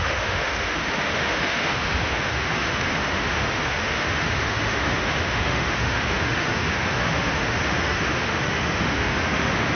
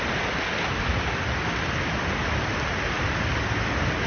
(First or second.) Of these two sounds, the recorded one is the second